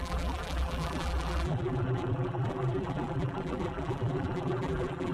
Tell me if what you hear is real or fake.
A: fake